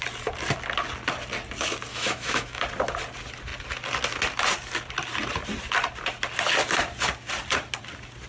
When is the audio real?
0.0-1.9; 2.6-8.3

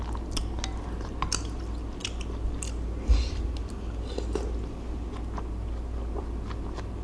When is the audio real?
0.0-7.0

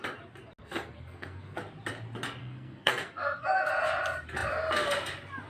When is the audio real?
0.0-0.6; 1.6-2.4; 3.7-5.5